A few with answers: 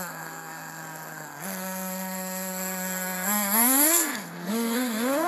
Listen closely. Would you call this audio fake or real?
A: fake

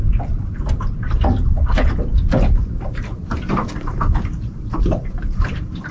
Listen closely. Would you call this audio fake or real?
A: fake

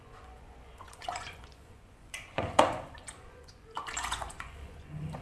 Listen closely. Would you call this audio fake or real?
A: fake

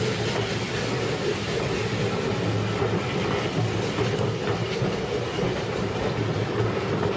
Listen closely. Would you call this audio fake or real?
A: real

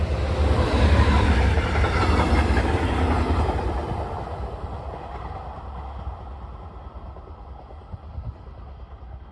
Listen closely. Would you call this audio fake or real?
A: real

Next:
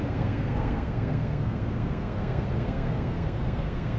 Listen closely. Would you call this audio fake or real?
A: fake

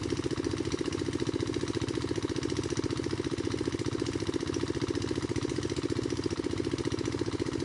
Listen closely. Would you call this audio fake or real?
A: real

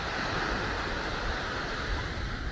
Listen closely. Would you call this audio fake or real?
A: real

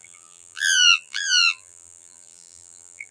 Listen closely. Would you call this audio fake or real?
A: fake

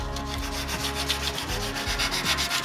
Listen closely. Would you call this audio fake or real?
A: real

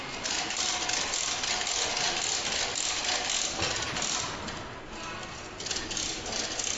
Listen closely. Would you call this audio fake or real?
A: real